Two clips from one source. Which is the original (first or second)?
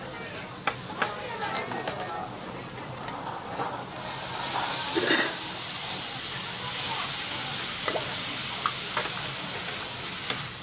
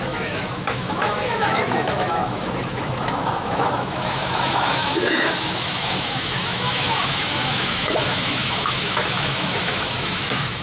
first